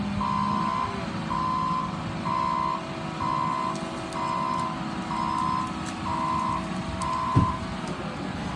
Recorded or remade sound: recorded